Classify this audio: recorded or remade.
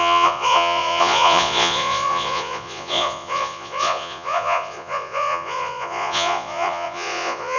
remade